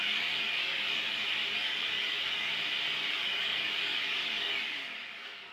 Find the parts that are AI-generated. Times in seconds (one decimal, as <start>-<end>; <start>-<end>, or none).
0.0-2.5; 3.1-5.5